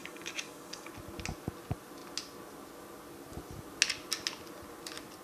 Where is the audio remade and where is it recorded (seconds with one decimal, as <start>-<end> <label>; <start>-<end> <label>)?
0.0-0.9 remade; 0.9-5.2 recorded